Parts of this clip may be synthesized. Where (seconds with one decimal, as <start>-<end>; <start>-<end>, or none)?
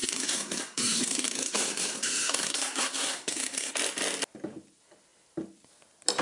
0.0-3.7